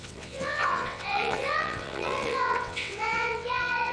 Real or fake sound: fake